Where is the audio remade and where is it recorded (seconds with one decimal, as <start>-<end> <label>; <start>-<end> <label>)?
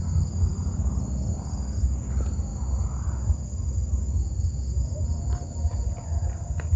0.0-6.8 recorded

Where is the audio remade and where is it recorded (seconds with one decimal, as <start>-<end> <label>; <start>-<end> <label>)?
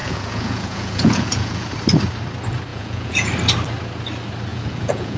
0.0-1.7 remade; 1.7-2.7 recorded; 2.7-3.3 remade; 3.3-4.5 recorded; 4.5-5.2 remade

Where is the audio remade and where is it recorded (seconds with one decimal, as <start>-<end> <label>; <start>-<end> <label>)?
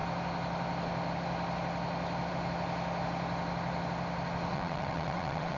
0.0-4.5 recorded; 4.5-5.6 remade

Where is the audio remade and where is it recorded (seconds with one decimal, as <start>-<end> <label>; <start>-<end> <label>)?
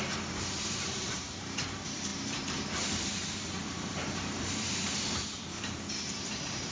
0.0-6.7 remade